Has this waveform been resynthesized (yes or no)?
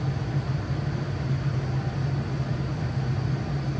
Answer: no